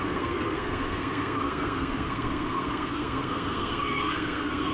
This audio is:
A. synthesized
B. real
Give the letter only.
A